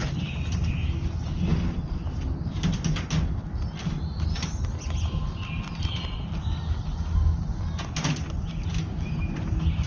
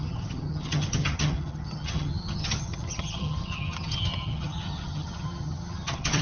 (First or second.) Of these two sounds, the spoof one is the second